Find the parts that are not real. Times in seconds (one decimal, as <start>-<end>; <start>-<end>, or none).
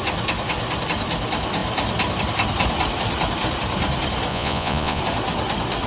4.3-5.0